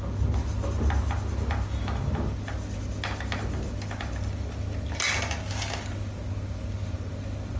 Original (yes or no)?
yes